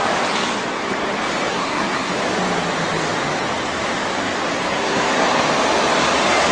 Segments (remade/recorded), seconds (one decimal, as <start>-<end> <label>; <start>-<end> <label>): 0.0-1.5 recorded; 1.5-2.1 remade; 2.1-4.7 recorded; 4.7-5.4 remade; 5.4-6.5 recorded